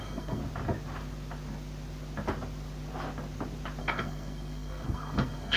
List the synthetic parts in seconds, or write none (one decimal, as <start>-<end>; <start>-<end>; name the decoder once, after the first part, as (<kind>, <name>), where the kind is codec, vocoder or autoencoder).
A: 0.0-0.4 (codec, SNAC); 3.8-5.6